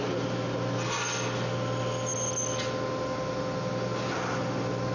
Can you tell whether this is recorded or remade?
recorded